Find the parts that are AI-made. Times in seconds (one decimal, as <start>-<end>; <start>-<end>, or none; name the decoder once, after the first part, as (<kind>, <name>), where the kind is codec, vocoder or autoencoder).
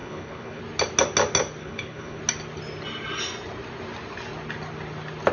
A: 0.0-0.6 (codec, HILCodec); 1.6-2.2